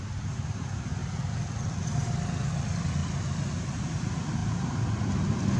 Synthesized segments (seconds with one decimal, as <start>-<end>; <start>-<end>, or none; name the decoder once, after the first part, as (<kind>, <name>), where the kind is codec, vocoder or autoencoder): 4.4-5.1 (vocoder, BigVGAN v2)